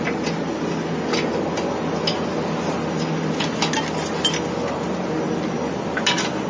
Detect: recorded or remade recorded